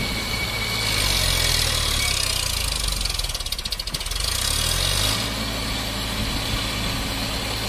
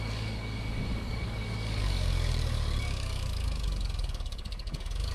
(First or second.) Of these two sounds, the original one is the first